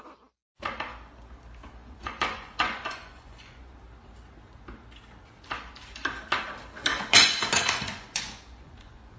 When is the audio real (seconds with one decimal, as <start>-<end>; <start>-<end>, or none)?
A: 0.0-1.8; 3.7-6.9